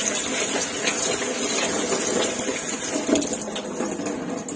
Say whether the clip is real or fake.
real